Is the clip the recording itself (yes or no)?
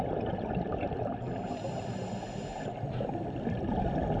yes